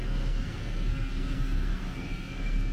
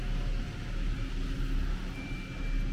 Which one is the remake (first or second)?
first